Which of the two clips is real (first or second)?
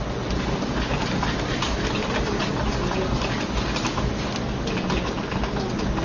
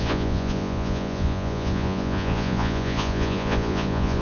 first